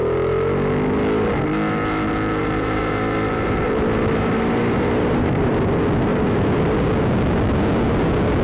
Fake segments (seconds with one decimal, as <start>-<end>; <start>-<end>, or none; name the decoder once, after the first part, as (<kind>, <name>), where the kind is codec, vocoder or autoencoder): 2.4-5.5 (vocoder, BigVGAN v2); 6.1-6.6